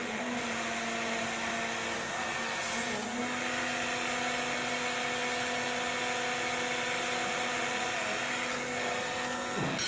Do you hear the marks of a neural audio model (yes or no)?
no